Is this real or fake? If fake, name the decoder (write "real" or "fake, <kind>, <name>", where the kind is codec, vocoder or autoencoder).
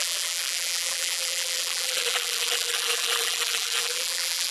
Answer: fake, vocoder, BigVGAN v2